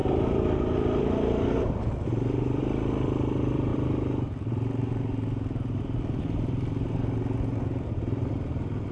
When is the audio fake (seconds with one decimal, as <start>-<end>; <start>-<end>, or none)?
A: none